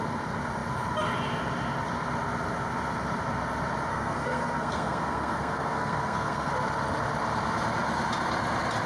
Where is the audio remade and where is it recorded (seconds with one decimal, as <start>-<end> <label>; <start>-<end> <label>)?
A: 0.0-3.9 recorded; 3.9-6.5 remade; 6.5-8.9 recorded